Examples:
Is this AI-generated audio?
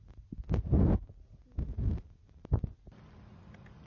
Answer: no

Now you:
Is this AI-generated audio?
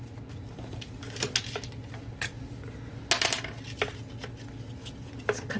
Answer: no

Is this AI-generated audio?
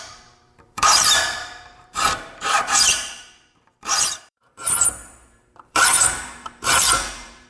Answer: yes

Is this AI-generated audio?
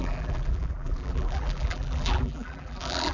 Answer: yes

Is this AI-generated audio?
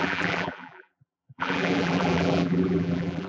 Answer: yes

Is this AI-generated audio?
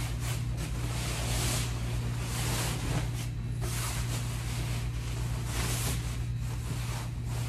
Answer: no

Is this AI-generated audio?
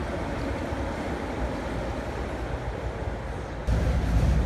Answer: no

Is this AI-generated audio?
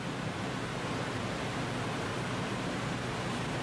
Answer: yes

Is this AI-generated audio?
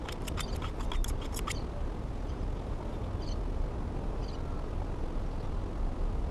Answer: no